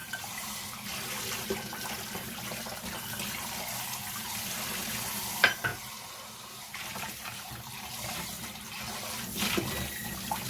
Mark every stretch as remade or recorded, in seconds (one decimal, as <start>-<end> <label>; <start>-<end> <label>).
0.0-0.6 remade; 0.6-5.7 recorded; 5.7-7.5 remade; 7.5-10.5 recorded